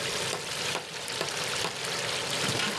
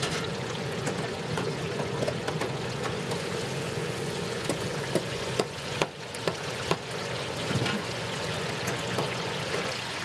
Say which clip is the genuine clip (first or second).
first